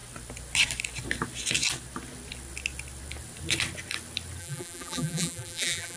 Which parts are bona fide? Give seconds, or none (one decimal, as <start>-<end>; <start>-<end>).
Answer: 0.0-4.4